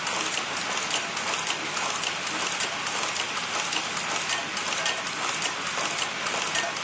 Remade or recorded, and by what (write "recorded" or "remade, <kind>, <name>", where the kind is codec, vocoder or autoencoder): recorded